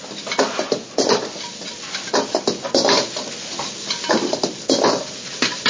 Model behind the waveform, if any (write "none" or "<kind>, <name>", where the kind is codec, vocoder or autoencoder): none